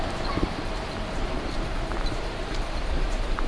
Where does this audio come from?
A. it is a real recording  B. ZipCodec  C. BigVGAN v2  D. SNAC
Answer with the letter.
C